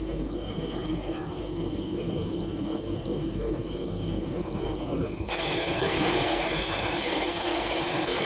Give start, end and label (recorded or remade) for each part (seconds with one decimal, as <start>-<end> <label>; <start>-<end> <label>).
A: 0.0-8.3 remade